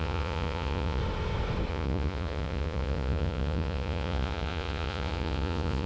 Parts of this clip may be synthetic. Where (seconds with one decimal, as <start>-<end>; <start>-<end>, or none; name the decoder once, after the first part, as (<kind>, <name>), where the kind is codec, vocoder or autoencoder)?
0.0-1.0 (vocoder, Vocos); 1.7-5.9